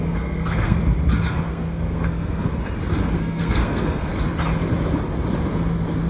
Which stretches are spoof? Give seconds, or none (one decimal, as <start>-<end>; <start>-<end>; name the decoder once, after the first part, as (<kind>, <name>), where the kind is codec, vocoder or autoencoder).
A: 0.0-0.8 (codec, SNAC); 1.5-2.5; 3.1-4.1